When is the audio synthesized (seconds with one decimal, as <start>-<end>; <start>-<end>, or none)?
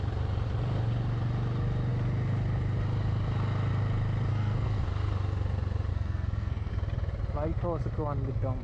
4.3-4.8; 5.9-6.7